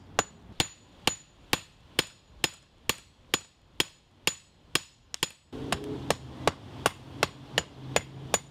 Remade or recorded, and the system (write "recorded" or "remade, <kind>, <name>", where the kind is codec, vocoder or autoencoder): recorded